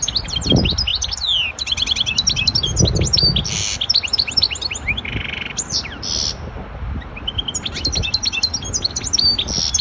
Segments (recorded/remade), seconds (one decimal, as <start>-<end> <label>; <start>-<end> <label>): 0.0-9.8 recorded